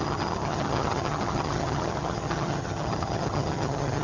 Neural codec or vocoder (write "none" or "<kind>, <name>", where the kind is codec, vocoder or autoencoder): vocoder, HiFi-GAN